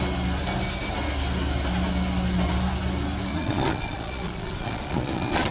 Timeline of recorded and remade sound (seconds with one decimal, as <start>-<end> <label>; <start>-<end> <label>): 0.0-3.3 recorded; 3.3-5.5 remade